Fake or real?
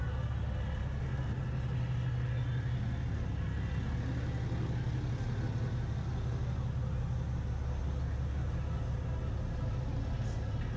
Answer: real